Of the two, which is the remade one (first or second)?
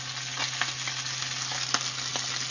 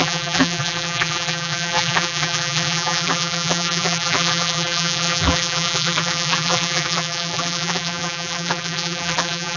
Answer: second